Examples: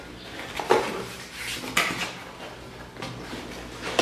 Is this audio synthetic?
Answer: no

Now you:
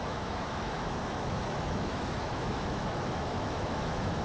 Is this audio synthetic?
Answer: yes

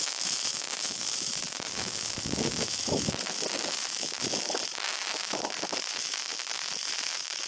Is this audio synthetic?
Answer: yes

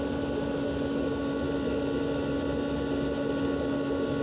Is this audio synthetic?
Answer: no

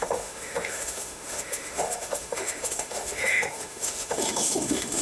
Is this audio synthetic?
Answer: yes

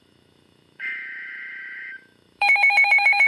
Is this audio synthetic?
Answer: yes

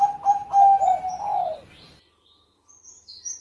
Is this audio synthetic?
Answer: no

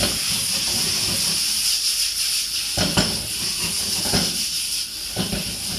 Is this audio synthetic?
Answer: no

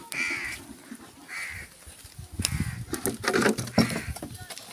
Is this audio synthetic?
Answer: no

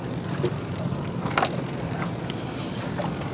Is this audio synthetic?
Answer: no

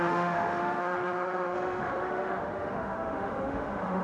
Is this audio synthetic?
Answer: yes